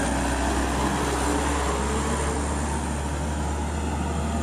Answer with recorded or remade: recorded